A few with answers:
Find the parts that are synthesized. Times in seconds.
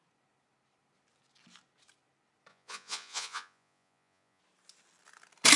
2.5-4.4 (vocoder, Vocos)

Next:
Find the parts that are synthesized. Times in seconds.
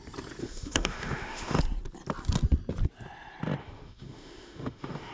0.4-1.6 (autoencoder, DAC-VAE); 3.6-5.1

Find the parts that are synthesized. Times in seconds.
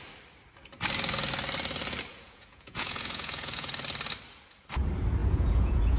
2.1-3.7 (vocoder, Vocos); 5.2-6.0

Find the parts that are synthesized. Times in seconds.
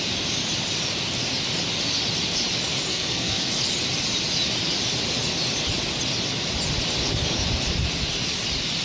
2.9-3.6 (codec, SNAC)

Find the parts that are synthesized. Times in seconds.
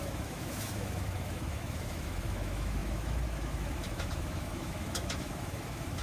0.0-6.0 (autoencoder, DAC-VAE)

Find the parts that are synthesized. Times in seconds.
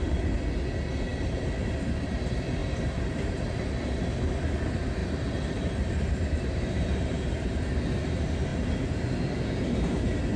2.6-3.5 (vocoder, BigVGAN v2); 5.0-7.9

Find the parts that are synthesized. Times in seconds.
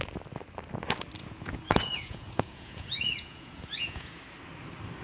1.2-4.2 (vocoder, Vocos)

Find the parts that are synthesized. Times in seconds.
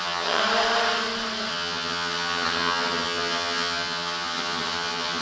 0.0-0.4 (vocoder, HiFi-GAN); 1.5-5.2